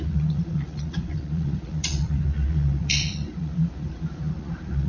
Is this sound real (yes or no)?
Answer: no